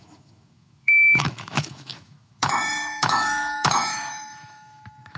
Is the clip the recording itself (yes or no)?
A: no